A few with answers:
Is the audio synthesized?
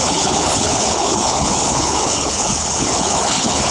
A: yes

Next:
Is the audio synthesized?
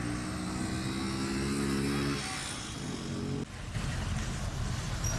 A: no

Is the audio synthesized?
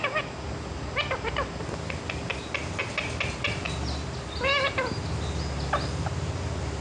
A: no